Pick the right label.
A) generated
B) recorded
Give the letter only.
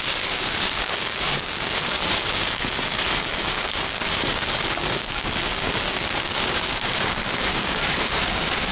A